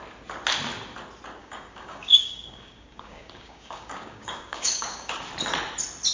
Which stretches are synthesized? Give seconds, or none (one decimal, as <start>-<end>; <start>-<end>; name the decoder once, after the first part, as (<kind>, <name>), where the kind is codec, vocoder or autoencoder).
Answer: 1.4-5.1 (codec, DAC)